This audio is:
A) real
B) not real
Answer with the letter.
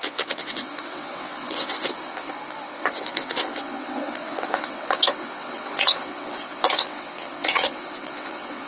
B